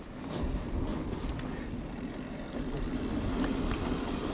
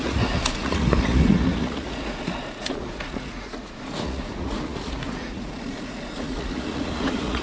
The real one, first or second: first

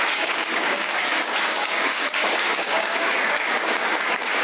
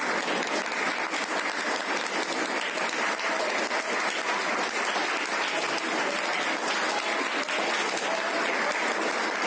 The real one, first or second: second